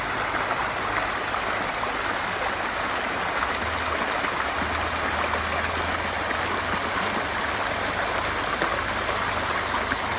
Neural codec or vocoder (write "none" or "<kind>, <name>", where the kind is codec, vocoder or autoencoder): none